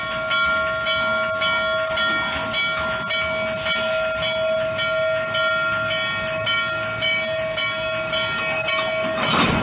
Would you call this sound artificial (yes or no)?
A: no